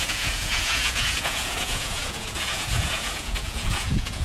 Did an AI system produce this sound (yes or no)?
yes